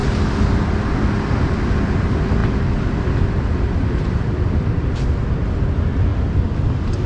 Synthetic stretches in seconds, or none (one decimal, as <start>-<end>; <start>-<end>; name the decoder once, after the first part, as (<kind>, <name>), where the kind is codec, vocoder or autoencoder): 2.0-6.1 (vocoder, BigVGAN v2)